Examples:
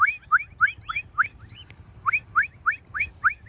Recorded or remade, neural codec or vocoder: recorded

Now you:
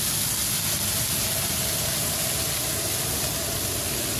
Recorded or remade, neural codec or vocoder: recorded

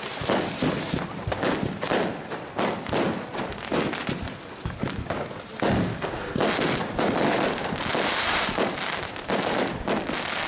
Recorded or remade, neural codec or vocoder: recorded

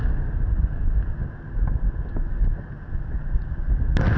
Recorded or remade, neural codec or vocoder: recorded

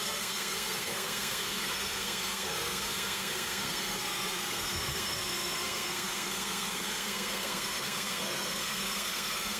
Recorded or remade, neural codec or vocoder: remade, codec, SNAC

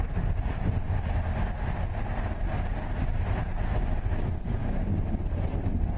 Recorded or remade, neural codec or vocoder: recorded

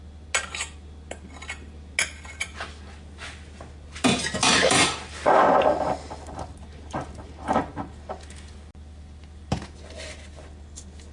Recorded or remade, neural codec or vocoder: recorded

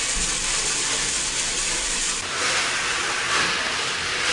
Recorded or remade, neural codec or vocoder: recorded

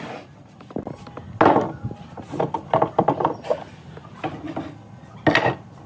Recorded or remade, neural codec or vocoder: recorded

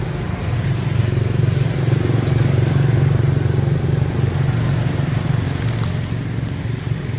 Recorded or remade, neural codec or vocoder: recorded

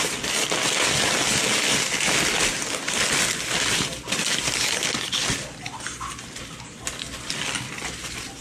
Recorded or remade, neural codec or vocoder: recorded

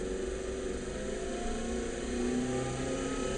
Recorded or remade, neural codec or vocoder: recorded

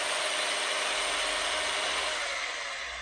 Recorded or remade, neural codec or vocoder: recorded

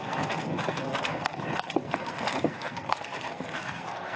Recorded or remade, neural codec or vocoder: remade, codec, SNAC